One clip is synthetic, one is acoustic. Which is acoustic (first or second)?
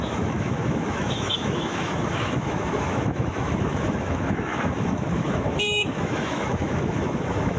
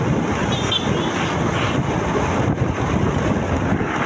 second